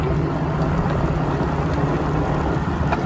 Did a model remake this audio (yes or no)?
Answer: yes